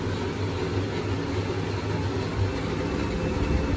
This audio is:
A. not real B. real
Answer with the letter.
B